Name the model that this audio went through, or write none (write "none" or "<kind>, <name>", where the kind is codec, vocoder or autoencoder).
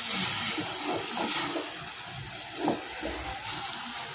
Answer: none